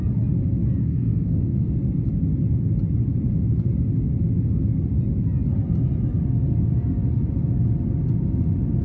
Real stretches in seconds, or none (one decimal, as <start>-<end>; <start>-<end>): 0.0-0.8; 1.8-8.8